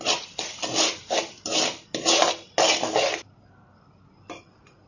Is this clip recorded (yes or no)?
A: yes